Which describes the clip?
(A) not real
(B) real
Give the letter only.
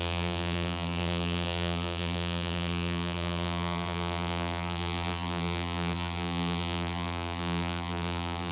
A